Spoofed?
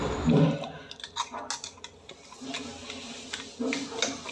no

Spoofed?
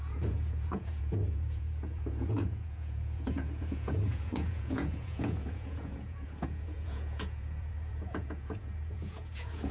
yes